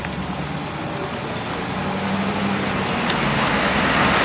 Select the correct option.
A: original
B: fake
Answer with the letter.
A